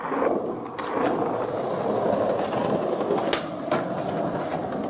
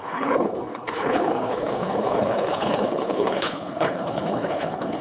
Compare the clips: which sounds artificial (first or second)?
second